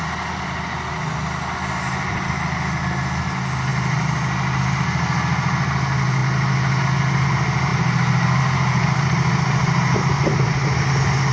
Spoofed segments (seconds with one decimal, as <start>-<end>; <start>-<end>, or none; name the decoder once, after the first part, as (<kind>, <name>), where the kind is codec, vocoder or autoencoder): none

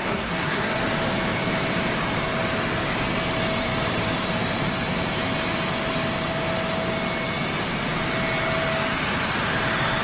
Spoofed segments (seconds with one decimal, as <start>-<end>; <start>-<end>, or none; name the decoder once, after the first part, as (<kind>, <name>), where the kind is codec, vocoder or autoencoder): 0.0-0.8 (codec, SNAC)